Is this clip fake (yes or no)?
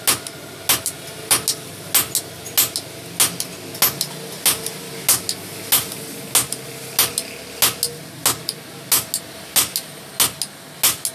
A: no